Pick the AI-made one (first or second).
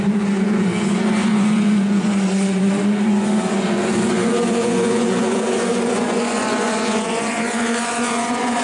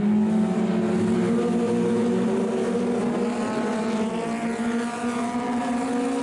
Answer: first